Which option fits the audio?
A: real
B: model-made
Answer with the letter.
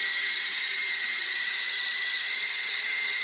B